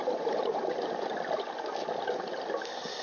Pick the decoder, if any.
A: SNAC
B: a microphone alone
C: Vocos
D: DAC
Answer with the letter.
B